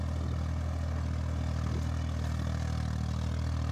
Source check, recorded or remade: recorded